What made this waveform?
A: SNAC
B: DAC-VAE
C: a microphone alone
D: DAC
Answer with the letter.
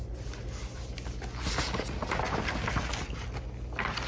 C